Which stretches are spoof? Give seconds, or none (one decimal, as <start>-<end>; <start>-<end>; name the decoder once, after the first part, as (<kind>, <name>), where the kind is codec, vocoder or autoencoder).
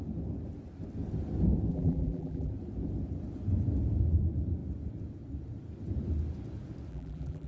1.7-2.5 (vocoder, BigVGAN v2); 6.9-7.5